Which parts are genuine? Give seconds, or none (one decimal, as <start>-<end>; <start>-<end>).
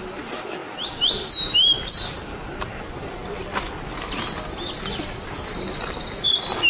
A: 0.0-6.7